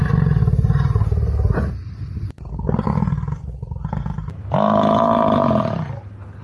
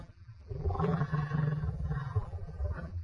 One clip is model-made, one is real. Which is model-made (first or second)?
second